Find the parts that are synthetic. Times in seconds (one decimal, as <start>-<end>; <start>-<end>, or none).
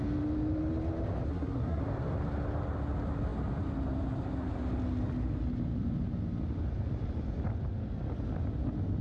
1.3-1.8